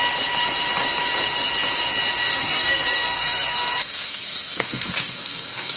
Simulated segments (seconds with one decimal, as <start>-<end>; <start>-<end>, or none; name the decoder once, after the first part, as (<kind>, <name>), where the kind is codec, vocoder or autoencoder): 2.3-5.8 (codec, SNAC)